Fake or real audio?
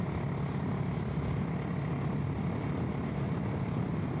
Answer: real